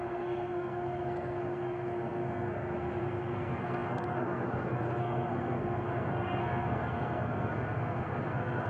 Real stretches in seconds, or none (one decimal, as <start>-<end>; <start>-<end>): none